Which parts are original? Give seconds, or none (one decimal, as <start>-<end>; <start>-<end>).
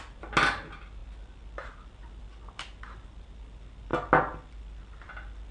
0.0-5.5